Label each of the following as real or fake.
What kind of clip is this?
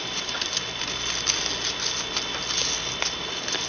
real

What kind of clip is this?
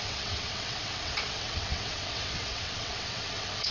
fake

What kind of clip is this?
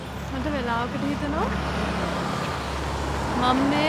real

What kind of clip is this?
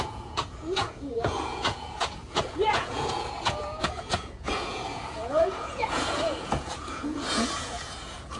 fake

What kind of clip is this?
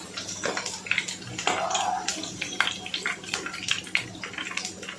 real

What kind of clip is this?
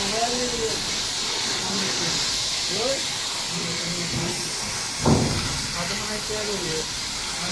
real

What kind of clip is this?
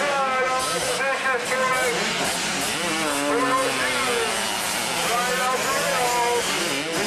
real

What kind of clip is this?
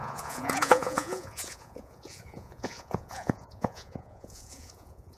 fake